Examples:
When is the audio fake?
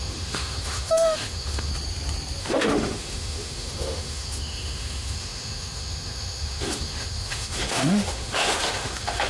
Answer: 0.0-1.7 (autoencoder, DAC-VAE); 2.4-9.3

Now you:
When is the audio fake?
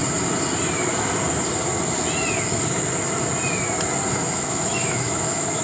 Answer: 4.1-5.6 (autoencoder, DAC-VAE)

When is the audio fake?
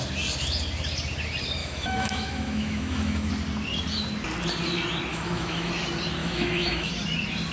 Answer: 1.6-3.3 (autoencoder, DAC-VAE); 5.1-5.7; 6.2-6.9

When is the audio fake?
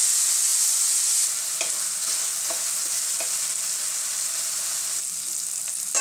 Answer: none